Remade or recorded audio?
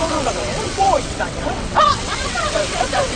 remade